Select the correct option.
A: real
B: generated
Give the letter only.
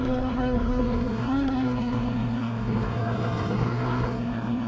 B